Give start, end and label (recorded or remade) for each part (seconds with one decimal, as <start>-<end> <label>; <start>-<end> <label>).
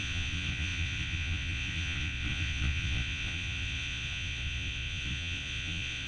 0.0-6.1 remade